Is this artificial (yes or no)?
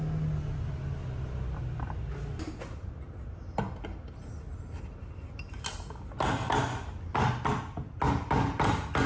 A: no